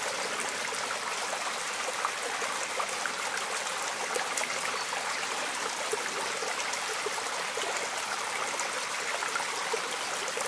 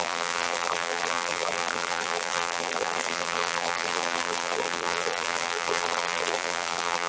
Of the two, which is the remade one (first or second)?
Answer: second